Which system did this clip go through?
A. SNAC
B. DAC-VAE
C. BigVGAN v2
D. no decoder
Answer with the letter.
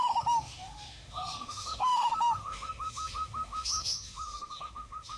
B